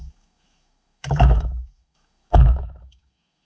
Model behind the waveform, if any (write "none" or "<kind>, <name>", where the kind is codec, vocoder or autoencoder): autoencoder, DAC-VAE